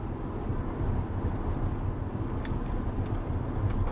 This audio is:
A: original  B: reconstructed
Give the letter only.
A